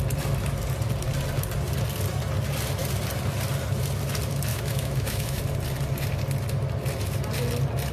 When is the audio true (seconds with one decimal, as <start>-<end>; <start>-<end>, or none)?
0.0-4.5; 5.4-7.9